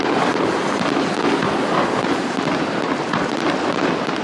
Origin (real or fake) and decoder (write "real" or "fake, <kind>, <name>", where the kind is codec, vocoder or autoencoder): real